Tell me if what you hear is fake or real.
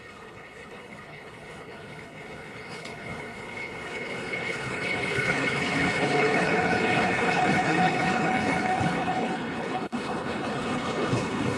fake